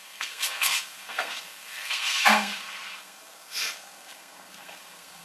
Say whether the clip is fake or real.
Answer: fake